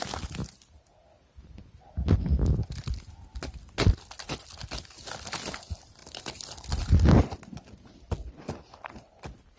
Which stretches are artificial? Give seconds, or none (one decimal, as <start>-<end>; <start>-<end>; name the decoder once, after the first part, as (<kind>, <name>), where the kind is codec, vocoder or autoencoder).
none